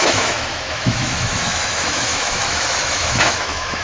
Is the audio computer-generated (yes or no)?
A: yes